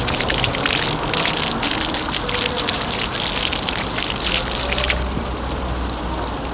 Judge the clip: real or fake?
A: real